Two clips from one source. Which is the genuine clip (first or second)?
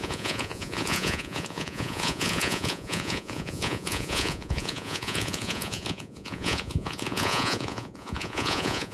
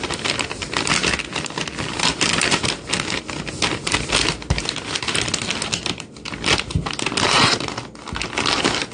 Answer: second